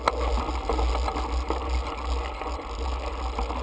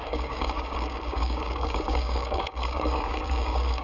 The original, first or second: first